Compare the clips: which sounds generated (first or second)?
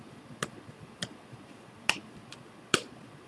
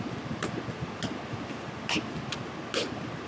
first